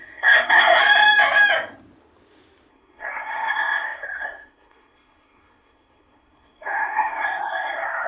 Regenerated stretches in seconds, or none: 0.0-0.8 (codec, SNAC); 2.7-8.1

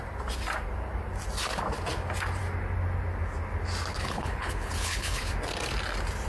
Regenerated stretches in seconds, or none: 3.9-5.3 (codec, HILCodec)

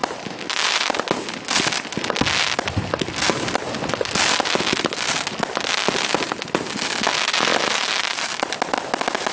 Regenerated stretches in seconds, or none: none

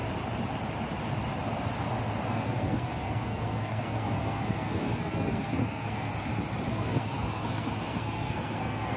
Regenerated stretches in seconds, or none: 2.3-6.1 (codec, SNAC); 6.7-9.0